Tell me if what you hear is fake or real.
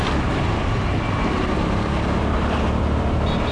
real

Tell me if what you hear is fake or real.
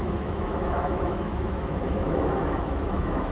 fake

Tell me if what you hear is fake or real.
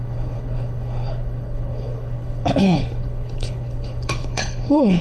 fake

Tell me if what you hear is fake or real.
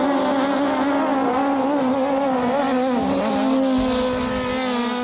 real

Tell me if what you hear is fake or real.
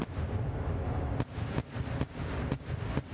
real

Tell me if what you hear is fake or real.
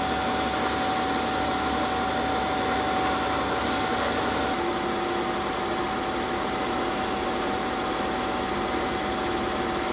real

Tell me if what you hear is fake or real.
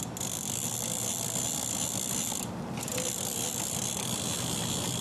real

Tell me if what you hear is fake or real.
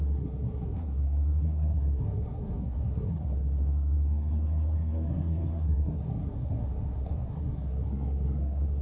fake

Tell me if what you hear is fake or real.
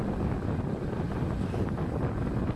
real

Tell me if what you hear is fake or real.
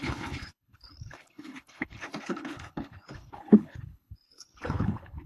fake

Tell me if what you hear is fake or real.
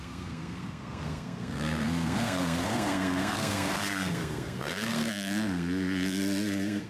fake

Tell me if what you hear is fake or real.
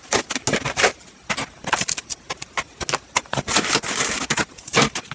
real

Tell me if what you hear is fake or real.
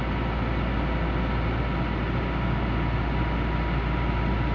real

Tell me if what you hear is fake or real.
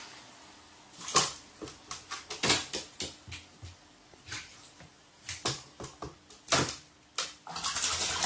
real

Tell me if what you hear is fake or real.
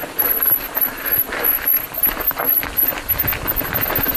real